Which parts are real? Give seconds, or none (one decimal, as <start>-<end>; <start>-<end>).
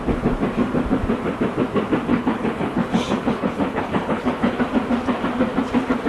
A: 0.0-2.1; 4.6-6.1